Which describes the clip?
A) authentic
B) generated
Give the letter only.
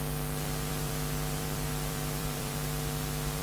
B